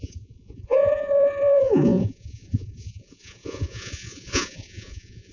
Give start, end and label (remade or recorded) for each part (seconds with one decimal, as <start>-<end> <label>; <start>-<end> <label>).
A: 0.0-5.3 remade